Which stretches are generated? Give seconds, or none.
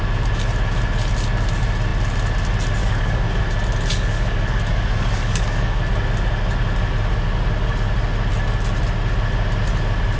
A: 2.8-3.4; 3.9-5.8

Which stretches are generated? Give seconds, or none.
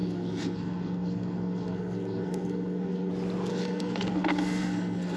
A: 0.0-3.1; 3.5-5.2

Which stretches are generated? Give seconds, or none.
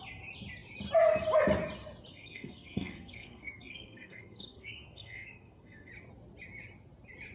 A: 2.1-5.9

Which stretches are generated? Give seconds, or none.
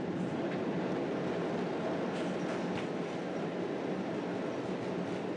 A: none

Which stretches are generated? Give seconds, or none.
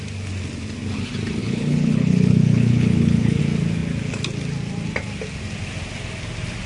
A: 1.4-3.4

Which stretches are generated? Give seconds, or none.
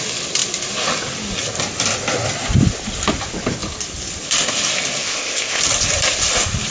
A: 5.0-5.6